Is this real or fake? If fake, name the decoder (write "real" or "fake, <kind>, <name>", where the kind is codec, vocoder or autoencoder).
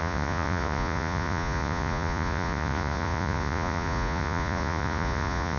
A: fake, vocoder, Vocos